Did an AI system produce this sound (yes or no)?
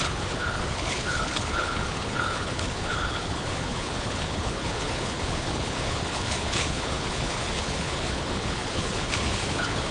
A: yes